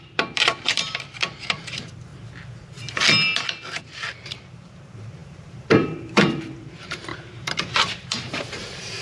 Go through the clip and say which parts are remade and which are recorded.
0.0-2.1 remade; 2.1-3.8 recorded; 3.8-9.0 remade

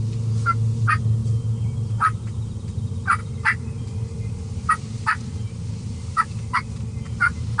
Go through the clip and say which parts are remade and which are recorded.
0.0-3.2 recorded; 3.2-4.3 remade; 4.3-7.6 recorded

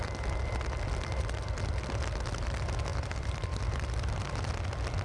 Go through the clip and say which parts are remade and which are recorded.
0.0-2.9 recorded; 2.9-3.6 remade; 3.6-5.0 recorded

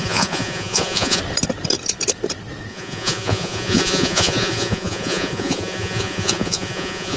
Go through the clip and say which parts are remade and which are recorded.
0.0-1.2 remade; 1.2-2.7 recorded; 2.7-7.2 remade

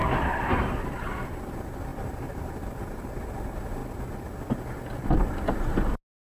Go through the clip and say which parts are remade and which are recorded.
0.0-1.9 recorded; 1.9-3.1 remade; 3.1-6.3 recorded

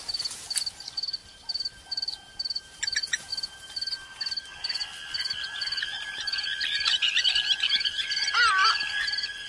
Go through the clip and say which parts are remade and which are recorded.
0.0-1.2 recorded; 1.2-3.3 remade; 3.3-9.5 recorded

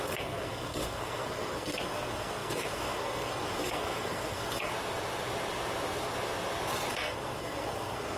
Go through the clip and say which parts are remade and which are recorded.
0.0-4.7 remade; 4.7-6.9 recorded; 6.9-8.2 remade

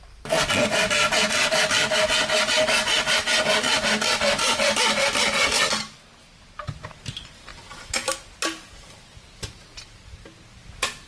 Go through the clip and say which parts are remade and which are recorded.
0.0-11.1 recorded